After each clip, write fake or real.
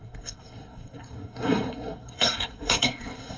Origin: fake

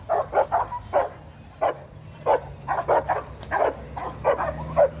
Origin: real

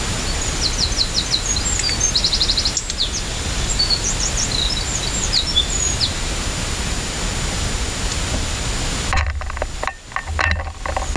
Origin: real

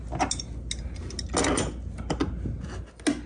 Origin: real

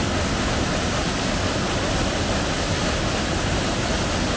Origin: real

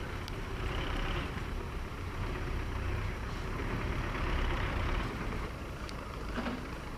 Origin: fake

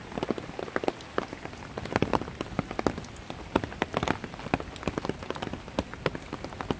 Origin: real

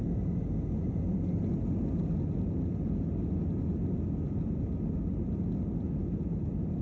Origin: real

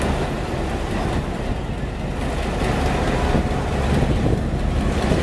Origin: real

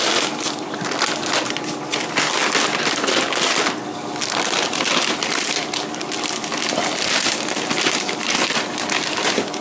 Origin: real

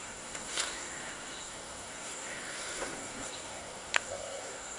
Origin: fake